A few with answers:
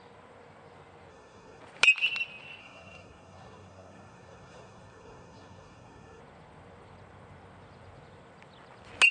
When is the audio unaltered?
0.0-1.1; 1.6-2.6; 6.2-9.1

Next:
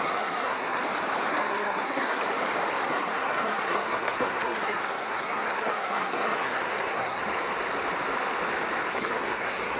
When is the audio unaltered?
0.8-1.3; 2.2-2.9; 7.2-8.9

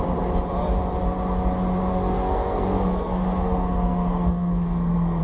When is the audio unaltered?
0.0-1.9

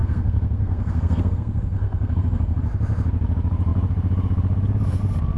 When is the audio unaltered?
2.6-5.4

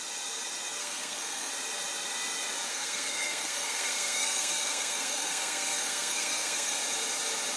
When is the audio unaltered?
0.0-0.8; 1.5-2.7; 6.8-7.6